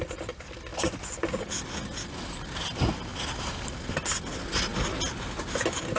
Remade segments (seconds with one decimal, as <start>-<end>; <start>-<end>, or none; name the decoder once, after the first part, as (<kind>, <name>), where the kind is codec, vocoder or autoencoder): 0.7-1.6 (vocoder, BigVGAN v2); 3.1-3.9